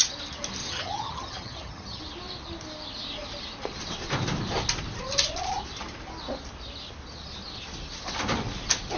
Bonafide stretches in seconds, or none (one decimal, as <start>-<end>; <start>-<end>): 0.0-0.6; 2.0-9.0